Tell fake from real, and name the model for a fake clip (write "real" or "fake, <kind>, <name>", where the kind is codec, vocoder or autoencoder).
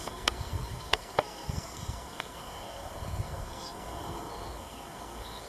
fake, codec, SNAC